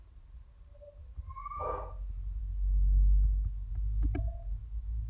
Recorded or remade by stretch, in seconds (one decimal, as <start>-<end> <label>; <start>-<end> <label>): 0.0-5.1 recorded